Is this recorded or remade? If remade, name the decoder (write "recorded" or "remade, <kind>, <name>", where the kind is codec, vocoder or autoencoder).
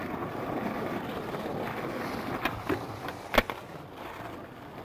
recorded